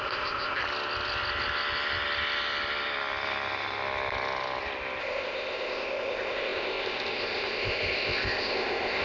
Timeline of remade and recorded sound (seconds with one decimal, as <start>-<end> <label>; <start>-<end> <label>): 0.0-0.6 remade; 0.6-5.0 recorded; 5.0-9.0 remade